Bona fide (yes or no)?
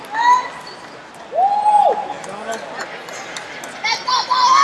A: yes